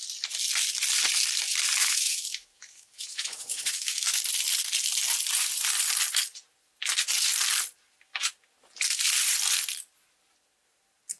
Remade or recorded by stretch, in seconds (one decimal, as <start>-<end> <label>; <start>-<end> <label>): 0.0-1.8 recorded; 1.8-4.2 remade; 4.2-11.2 recorded

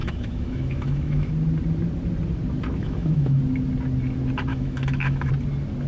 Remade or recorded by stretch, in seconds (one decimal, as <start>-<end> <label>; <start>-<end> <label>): 0.0-1.3 remade; 1.3-2.8 recorded; 2.8-3.4 remade; 3.4-4.5 recorded; 4.5-5.3 remade; 5.3-5.9 recorded

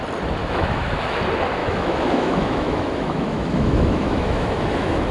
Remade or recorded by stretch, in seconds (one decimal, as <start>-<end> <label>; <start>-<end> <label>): 0.0-0.4 recorded; 0.4-1.2 remade; 1.2-1.6 recorded; 1.6-5.1 remade

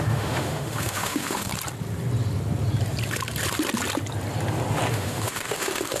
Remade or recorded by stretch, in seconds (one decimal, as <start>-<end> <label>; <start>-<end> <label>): 0.0-1.5 remade; 1.5-4.9 recorded; 4.9-6.0 remade

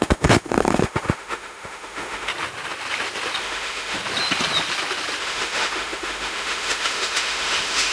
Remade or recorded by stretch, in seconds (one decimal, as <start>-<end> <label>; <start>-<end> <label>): 0.0-2.3 remade; 2.3-3.4 recorded; 3.4-4.0 remade; 4.0-5.2 recorded; 5.2-7.9 remade

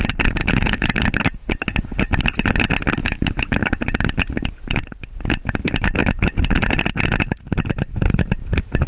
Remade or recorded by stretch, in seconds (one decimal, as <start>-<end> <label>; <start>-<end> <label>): 0.0-0.4 recorded; 0.4-0.9 remade; 0.9-3.0 recorded; 3.0-3.6 remade; 3.6-8.9 recorded

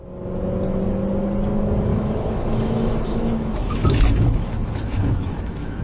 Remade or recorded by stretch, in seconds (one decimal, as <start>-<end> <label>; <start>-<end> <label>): 0.0-1.9 recorded; 1.9-5.8 remade

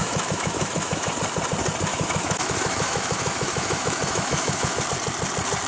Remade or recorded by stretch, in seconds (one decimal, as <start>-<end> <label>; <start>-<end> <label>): 0.0-1.1 remade; 1.1-1.9 recorded; 1.9-4.8 remade; 4.8-5.7 recorded